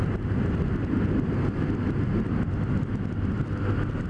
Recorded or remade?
recorded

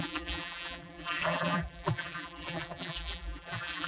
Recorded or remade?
remade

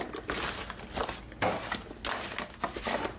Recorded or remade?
recorded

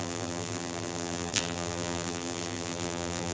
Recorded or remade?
remade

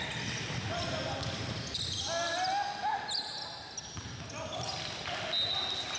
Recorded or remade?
recorded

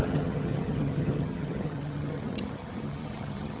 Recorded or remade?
remade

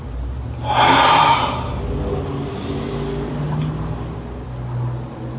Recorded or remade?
recorded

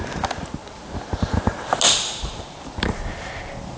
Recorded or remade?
recorded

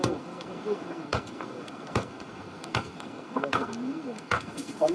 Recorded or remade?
remade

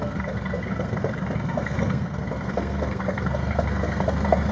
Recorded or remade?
remade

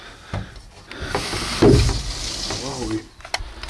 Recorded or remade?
recorded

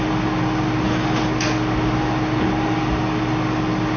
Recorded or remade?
recorded